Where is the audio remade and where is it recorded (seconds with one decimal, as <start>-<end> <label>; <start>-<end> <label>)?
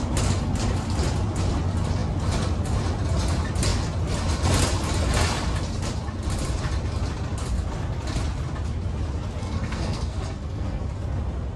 0.0-9.4 recorded; 9.4-10.8 remade; 10.8-11.6 recorded